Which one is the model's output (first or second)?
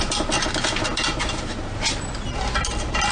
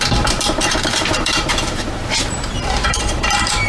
second